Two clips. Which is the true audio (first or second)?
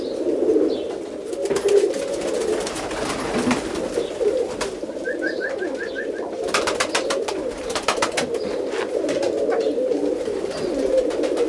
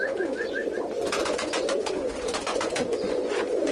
first